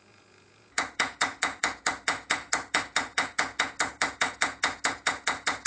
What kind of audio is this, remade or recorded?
remade